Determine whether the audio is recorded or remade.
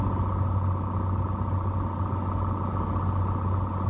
recorded